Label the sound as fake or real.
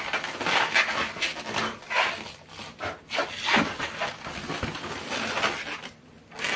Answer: real